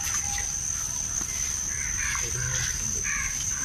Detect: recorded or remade recorded